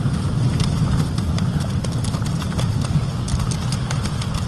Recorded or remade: recorded